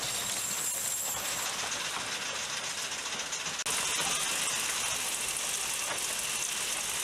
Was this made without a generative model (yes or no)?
yes